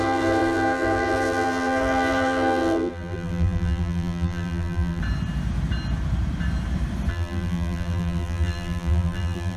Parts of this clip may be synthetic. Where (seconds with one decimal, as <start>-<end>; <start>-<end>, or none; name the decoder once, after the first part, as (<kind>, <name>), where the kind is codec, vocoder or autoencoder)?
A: 0.0-5.0 (vocoder, BigVGAN v2); 7.1-9.6